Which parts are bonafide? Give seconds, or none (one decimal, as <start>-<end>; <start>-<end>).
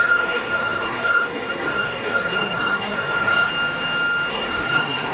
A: 3.5-4.3